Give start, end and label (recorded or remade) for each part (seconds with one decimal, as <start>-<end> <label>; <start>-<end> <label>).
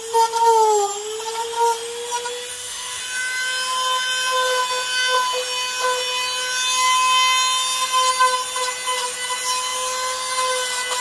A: 0.0-2.5 recorded; 2.5-3.0 remade; 3.0-11.0 recorded